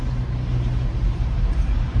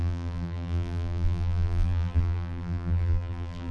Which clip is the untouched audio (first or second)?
first